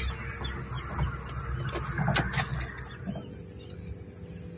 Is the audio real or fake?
real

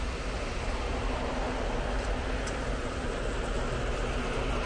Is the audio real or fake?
real